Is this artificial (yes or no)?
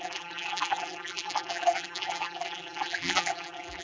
yes